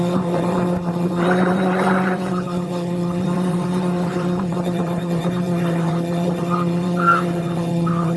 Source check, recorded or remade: remade